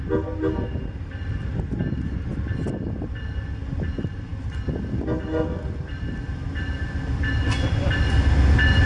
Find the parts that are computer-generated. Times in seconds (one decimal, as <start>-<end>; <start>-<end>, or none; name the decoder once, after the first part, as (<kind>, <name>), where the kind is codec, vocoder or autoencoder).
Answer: none